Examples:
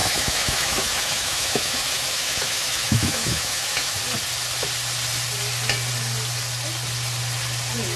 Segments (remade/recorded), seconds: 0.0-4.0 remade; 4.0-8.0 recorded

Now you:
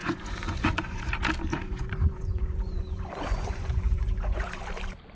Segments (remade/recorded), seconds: 0.0-1.1 remade; 1.1-1.5 recorded; 1.5-4.6 remade; 4.6-5.2 recorded